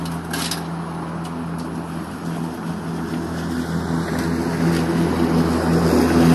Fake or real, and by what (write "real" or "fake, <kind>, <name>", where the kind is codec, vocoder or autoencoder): real